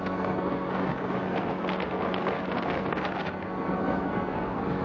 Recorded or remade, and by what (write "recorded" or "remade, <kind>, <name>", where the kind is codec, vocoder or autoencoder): remade, codec, SNAC